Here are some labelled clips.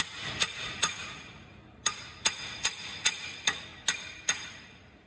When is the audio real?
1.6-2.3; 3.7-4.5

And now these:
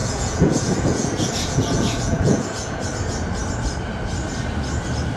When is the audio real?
2.8-5.2

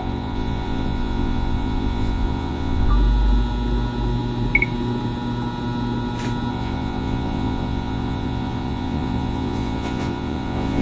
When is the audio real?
2.9-6.5

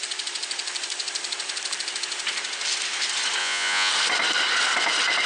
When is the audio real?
0.0-3.4; 3.9-5.3

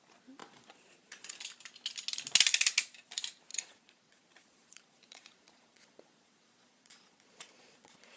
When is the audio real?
0.0-0.4; 1.3-3.5

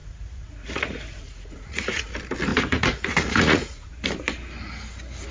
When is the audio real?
2.1-2.5; 3.9-5.3

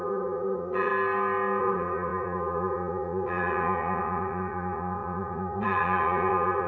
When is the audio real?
0.9-1.6

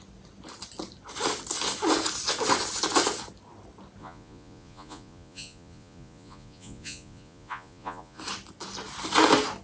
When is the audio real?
0.0-4.0; 8.2-9.6